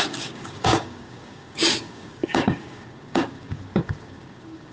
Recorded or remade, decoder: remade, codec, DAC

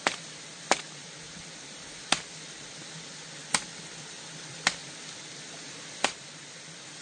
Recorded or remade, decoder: recorded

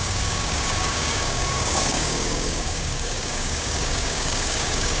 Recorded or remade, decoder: remade, codec, DAC